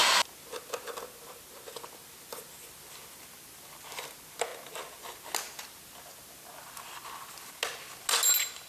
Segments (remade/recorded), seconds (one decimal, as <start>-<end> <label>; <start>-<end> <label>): 0.0-8.7 recorded